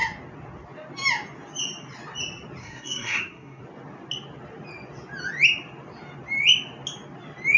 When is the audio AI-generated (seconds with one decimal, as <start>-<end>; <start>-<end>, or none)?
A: 2.6-3.6